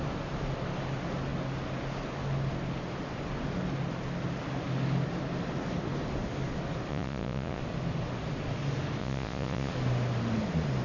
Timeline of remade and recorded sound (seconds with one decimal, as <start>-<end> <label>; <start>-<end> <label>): 0.0-6.9 recorded; 6.9-7.6 remade; 7.6-9.0 recorded; 9.0-9.7 remade; 9.7-10.8 recorded